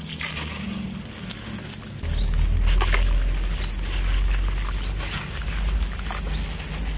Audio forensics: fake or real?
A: real